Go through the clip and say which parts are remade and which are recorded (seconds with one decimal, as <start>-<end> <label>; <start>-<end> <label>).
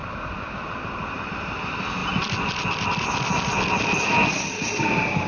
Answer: 0.0-5.3 recorded